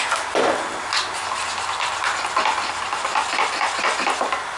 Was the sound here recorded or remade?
recorded